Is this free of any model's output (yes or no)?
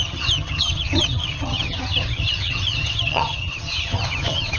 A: no